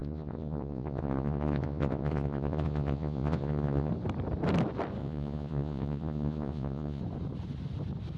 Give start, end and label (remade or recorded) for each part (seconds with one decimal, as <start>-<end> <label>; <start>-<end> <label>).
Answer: 0.0-3.9 remade; 3.9-5.0 recorded; 5.0-7.0 remade; 7.0-8.2 recorded